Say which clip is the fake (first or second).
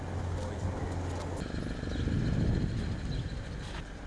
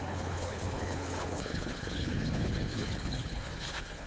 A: second